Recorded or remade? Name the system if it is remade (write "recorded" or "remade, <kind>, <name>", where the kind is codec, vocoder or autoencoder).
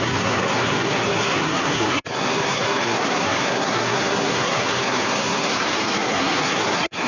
remade, codec, SNAC